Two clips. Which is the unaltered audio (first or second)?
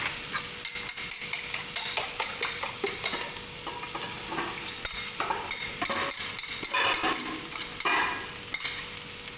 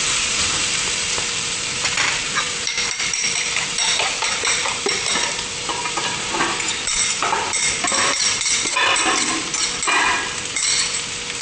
first